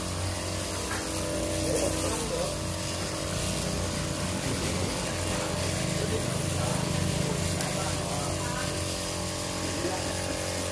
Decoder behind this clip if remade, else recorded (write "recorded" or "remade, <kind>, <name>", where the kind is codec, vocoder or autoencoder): recorded